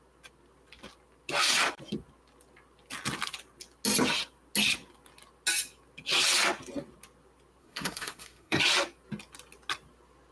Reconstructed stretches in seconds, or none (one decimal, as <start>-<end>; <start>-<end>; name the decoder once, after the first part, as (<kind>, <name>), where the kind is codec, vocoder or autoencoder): 7.6-8.6 (codec, SNAC)